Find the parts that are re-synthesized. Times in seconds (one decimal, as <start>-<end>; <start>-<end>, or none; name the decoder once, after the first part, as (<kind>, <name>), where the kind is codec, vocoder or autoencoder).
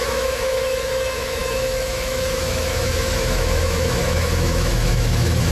0.0-5.5 (autoencoder, DAC-VAE)